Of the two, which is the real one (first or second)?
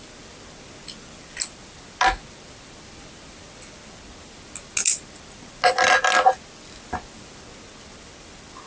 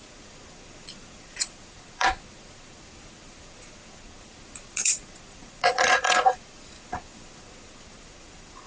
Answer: first